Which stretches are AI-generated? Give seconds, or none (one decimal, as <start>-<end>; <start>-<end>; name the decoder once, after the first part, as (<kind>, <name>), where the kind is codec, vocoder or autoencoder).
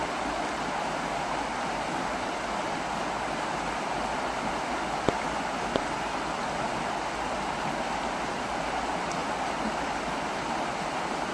none